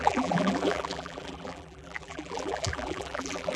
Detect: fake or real fake